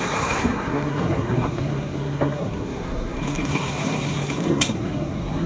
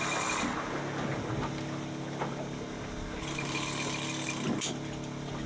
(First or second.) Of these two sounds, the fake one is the first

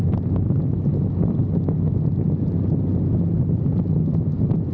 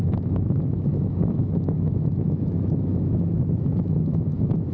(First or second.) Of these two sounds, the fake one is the second